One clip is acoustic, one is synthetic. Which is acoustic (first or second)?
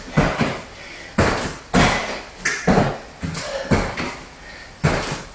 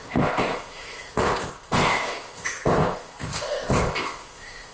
first